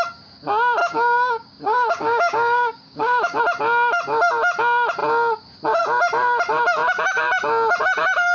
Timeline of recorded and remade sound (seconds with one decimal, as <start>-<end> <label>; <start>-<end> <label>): 0.0-0.8 recorded; 0.8-3.4 remade; 3.4-8.3 recorded

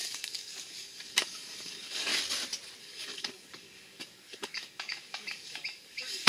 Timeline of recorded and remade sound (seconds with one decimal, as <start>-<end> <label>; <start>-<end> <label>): 0.0-2.1 remade; 2.1-2.8 recorded; 2.8-6.3 remade